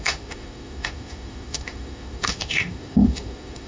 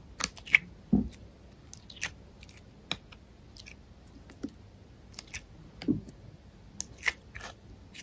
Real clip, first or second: second